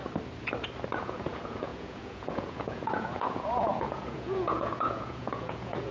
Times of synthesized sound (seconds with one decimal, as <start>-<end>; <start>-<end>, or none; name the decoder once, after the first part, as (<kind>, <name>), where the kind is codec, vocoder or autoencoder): 1.0-5.9 (vocoder, Vocos)